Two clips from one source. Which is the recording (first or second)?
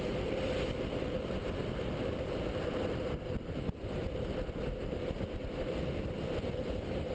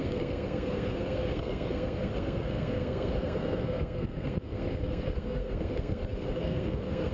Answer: first